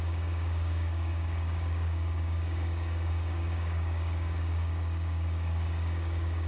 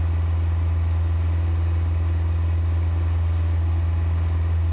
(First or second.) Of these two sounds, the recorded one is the second